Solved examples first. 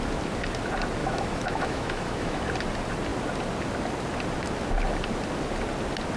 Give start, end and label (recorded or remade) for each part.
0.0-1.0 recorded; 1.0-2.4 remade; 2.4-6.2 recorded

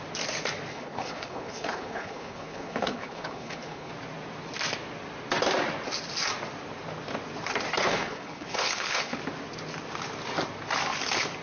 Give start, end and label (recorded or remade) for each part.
0.0-0.7 recorded; 0.7-3.9 remade; 3.9-7.8 recorded; 7.8-9.2 remade; 9.2-11.4 recorded

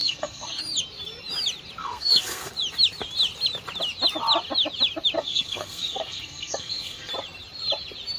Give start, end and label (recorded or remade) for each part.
0.0-0.6 remade; 0.6-1.8 recorded; 1.8-2.5 remade; 2.5-5.2 recorded; 5.2-7.1 remade; 7.1-8.2 recorded

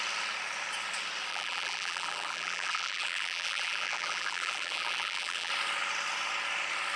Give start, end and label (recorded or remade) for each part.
0.0-1.3 recorded; 1.3-5.5 remade; 5.5-7.0 recorded

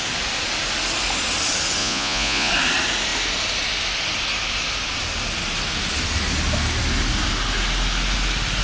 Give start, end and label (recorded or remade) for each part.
0.0-1.8 recorded; 1.8-2.5 remade; 2.5-8.6 recorded